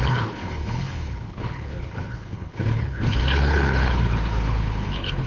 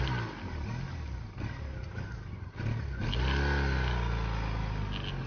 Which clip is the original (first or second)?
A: second